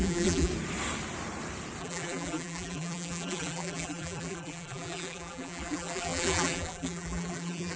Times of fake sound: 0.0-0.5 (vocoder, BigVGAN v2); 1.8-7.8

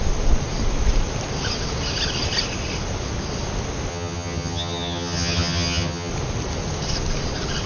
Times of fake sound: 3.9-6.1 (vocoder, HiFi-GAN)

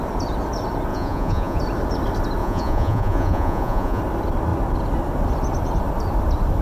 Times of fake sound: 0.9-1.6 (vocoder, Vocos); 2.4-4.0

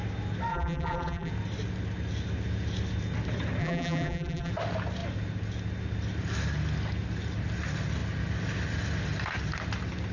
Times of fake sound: 0.5-1.3 (vocoder, BigVGAN v2); 3.6-4.5

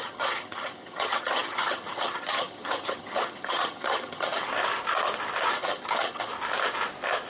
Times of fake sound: 0.0-4.5 (vocoder, HiFi-GAN); 5.5-6.3

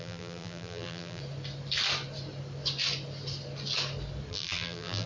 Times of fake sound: 0.0-1.2 (vocoder, BigVGAN v2); 4.3-5.1

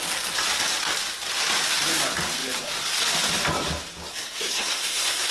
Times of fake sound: 4.1-5.3 (codec, SNAC)

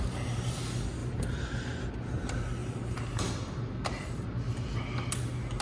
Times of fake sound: 1.0-1.9 (vocoder, BigVGAN v2); 2.6-4.3